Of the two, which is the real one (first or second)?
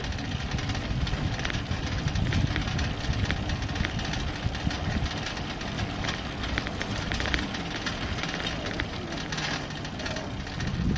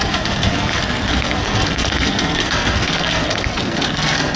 first